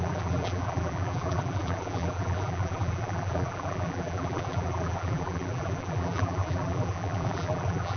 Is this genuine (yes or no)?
no